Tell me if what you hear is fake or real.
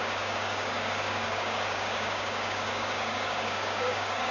fake